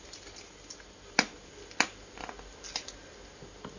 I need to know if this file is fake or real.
real